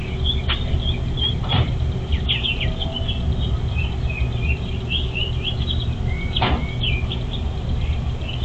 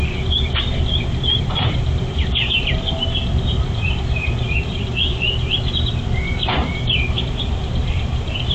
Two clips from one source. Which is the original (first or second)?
first